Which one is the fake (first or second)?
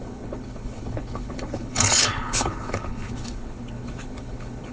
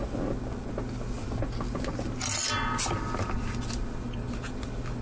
first